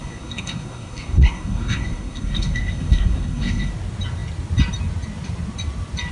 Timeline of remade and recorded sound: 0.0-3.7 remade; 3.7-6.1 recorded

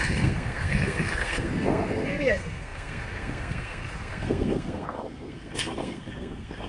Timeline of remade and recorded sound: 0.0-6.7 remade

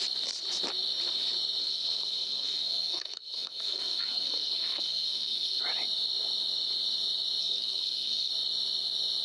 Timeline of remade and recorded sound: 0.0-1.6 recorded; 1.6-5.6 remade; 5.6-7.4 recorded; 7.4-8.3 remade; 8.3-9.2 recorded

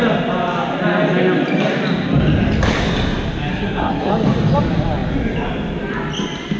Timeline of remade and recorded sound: 0.0-3.5 recorded; 3.5-4.1 remade; 4.1-6.6 recorded